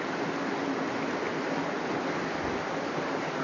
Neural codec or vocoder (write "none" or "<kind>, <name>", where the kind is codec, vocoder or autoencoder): none